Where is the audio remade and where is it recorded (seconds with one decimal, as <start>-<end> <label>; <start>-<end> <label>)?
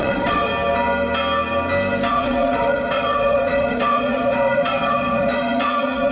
0.0-0.5 remade; 0.5-2.1 recorded; 2.1-6.1 remade